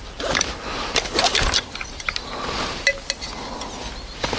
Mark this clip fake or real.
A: real